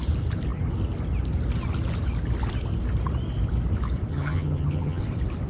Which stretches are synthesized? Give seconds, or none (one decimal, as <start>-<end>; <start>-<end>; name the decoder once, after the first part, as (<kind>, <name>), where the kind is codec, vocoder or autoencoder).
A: 4.1-5.0 (vocoder, HiFi-GAN)

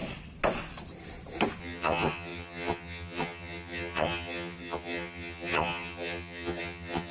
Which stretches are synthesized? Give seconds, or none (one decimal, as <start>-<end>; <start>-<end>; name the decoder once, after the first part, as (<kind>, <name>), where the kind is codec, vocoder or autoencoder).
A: 1.6-7.1 (vocoder, HiFi-GAN)